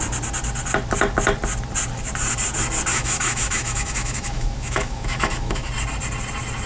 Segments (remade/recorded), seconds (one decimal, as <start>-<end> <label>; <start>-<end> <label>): 0.0-2.9 recorded; 2.9-5.7 remade; 5.7-6.7 recorded